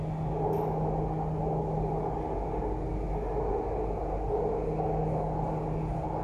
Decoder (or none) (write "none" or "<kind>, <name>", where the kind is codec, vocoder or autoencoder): none